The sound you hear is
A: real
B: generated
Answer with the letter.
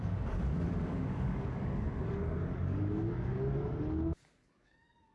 B